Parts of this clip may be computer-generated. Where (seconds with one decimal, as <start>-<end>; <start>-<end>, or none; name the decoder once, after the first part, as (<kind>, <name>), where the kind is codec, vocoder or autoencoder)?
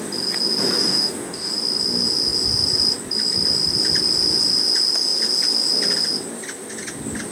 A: 0.8-1.5 (codec, DAC)